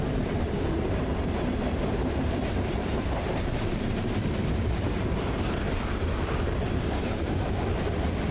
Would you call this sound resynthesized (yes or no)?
yes